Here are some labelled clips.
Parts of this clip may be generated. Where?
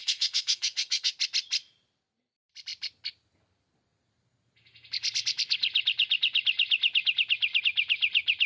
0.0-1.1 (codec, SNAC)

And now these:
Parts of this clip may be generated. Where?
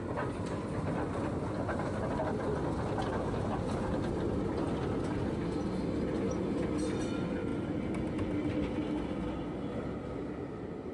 none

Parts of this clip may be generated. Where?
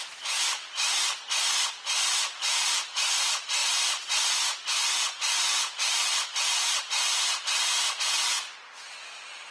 none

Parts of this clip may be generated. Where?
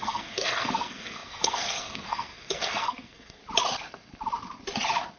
0.0-3.4 (codec, SNAC)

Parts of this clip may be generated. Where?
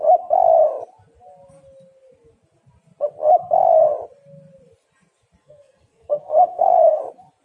5.4-7.0 (codec, SNAC)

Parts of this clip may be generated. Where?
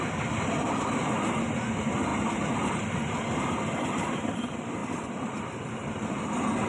none